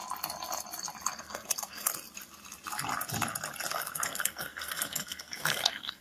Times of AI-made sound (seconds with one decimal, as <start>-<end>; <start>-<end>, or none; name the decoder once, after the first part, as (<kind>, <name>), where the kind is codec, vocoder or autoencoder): 1.2-1.9 (codec, SNAC); 3.7-6.0